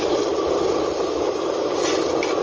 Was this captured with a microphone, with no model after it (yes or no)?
yes